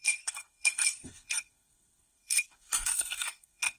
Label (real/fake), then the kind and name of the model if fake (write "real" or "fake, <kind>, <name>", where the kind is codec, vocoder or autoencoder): fake, codec, SNAC